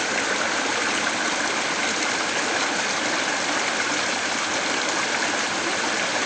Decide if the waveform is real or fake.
real